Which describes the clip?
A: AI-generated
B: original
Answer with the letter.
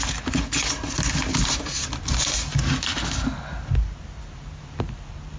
B